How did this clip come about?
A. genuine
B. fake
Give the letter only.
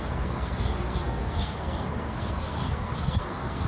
B